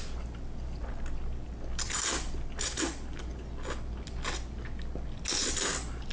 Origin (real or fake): real